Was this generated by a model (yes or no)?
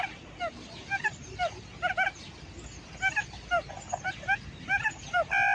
no